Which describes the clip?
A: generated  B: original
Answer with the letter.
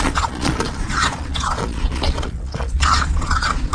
A